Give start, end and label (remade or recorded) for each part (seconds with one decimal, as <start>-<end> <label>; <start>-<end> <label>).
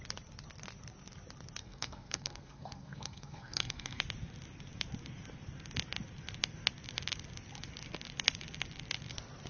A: 0.0-1.6 recorded; 1.6-4.0 remade; 4.0-9.5 recorded